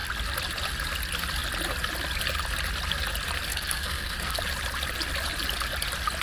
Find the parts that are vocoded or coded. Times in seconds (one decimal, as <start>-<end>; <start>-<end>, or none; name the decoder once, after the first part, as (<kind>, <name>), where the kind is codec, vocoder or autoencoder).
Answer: 3.5-4.4 (codec, SNAC)